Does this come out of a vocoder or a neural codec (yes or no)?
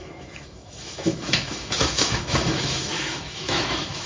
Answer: yes